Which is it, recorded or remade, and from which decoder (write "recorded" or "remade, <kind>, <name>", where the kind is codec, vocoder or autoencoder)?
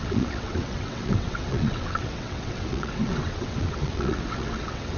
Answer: remade, vocoder, WaveNeXt